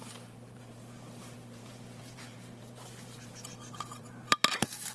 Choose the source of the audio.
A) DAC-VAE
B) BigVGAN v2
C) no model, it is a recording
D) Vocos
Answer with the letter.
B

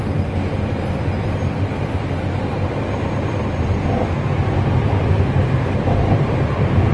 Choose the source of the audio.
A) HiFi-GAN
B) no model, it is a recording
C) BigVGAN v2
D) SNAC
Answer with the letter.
C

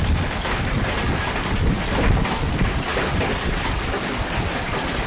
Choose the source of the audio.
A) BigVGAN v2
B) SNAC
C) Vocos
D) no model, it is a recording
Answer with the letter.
D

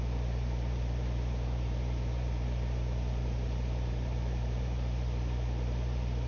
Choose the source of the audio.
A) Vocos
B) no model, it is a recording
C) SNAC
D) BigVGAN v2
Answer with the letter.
D